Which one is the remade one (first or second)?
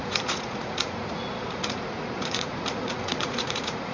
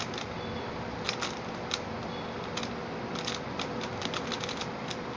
first